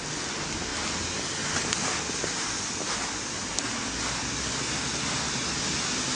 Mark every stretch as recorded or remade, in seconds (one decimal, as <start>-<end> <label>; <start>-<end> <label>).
0.0-6.1 recorded